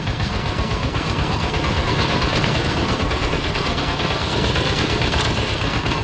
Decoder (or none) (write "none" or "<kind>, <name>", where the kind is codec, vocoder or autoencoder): codec, SNAC